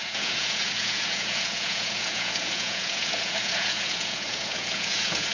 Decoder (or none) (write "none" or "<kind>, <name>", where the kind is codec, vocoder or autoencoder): vocoder, Vocos